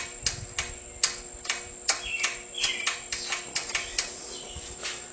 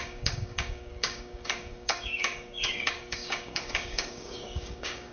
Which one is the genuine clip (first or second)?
first